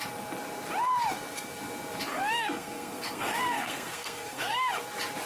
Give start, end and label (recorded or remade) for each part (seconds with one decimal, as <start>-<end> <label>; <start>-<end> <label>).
0.0-2.1 recorded; 2.1-4.7 remade; 4.7-5.3 recorded